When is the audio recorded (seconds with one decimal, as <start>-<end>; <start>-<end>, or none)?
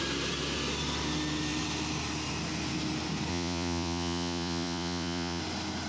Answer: 0.0-3.3; 5.4-5.9